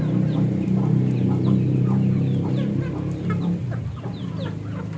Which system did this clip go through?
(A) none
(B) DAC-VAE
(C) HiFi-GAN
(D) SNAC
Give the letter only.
A